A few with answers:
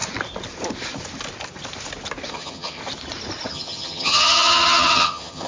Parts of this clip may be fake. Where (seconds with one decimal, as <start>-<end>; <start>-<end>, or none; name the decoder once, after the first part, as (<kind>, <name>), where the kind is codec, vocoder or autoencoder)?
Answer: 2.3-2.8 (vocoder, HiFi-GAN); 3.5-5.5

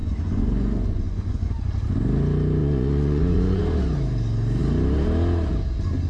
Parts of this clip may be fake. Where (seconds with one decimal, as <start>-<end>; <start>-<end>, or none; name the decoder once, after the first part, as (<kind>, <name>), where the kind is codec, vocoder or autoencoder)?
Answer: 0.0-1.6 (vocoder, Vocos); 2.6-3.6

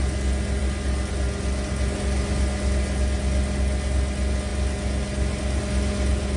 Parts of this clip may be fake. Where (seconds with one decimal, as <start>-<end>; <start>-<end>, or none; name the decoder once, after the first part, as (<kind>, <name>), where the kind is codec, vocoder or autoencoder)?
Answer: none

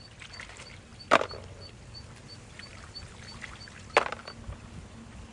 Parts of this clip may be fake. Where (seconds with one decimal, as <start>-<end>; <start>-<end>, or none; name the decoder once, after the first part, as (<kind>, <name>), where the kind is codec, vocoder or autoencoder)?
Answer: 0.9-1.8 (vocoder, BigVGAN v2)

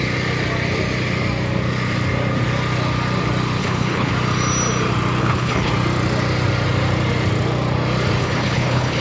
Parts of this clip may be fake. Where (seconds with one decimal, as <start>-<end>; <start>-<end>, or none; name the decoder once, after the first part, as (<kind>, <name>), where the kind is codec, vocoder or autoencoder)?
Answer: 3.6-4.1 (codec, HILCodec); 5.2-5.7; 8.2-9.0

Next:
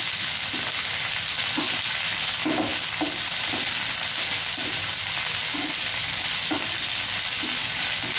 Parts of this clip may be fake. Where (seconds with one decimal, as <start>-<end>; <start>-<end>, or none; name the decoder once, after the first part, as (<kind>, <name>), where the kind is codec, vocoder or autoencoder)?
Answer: none